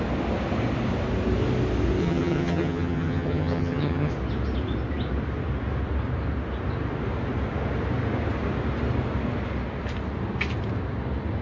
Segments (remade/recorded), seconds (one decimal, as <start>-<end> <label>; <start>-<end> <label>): 0.0-2.0 recorded; 2.0-4.1 remade; 4.1-11.4 recorded